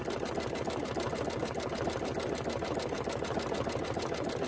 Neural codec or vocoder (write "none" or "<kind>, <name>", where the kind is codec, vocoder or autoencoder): none